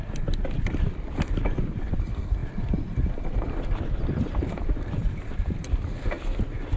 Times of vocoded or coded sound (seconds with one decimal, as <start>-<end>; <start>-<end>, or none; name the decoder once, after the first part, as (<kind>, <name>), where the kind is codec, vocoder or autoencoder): none